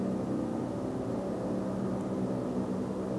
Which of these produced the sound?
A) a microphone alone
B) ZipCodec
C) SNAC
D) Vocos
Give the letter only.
A